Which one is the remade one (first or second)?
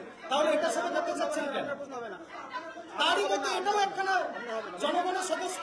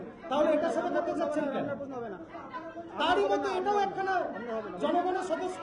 first